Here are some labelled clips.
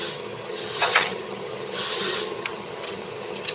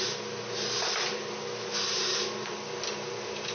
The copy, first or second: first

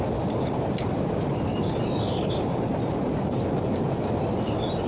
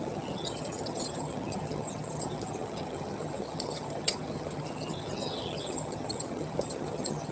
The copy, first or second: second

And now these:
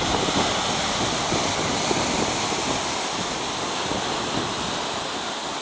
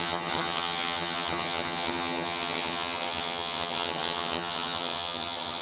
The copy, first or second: second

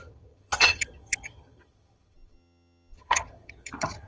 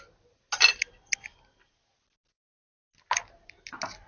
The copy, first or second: first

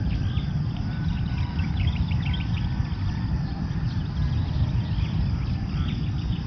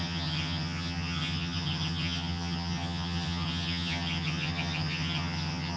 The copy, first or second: second